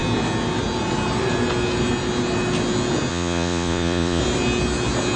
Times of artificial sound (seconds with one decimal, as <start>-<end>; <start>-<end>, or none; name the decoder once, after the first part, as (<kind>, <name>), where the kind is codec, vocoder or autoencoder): 3.1-4.2 (vocoder, Vocos)